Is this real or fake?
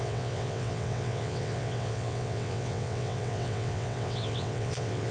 fake